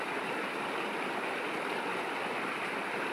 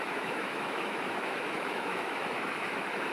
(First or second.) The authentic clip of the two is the first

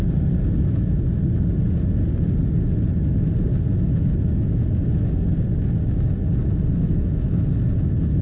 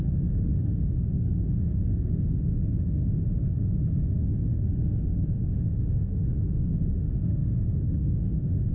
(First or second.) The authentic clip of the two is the first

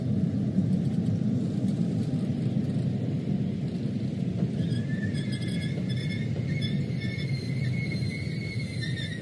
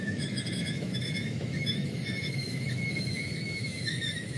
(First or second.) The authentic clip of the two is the first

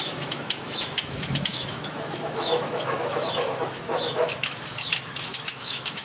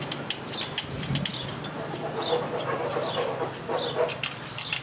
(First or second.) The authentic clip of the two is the second